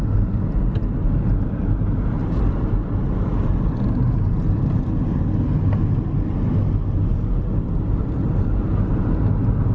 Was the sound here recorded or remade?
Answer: recorded